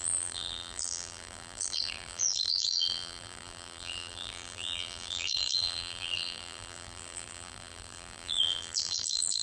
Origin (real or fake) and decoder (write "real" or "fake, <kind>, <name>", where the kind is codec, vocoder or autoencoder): fake, vocoder, BigVGAN v2